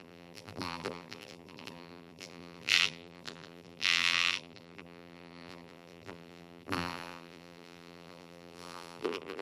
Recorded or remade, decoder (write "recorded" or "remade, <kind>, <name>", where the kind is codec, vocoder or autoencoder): remade, vocoder, BigVGAN v2